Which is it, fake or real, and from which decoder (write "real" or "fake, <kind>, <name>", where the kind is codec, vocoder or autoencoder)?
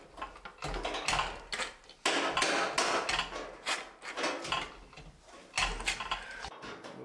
real